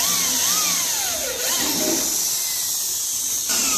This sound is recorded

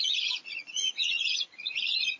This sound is remade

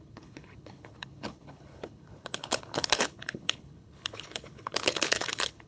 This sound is remade